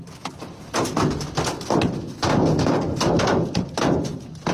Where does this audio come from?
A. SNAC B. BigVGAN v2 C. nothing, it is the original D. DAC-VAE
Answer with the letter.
C